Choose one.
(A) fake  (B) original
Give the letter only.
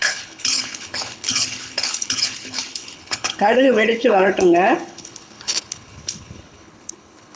A